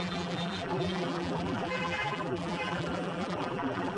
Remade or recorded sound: remade